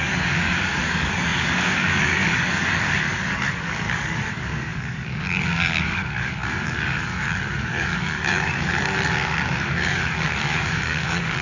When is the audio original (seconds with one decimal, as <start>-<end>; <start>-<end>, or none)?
none